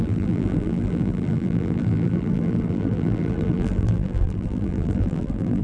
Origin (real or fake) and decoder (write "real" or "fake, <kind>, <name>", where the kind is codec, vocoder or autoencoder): fake, vocoder, BigVGAN v2